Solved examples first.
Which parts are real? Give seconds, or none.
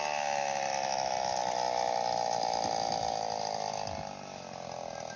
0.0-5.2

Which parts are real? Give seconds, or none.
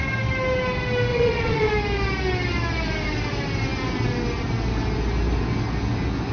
0.0-1.1; 1.7-6.3